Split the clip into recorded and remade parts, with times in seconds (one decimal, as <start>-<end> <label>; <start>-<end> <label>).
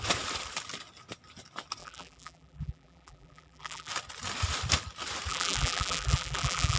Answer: 0.0-1.8 recorded; 1.8-3.9 remade; 3.9-5.3 recorded; 5.3-6.8 remade